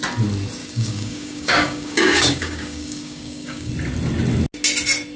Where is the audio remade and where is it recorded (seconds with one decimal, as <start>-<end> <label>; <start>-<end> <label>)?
0.0-0.6 recorded; 0.6-3.7 remade; 3.7-5.2 recorded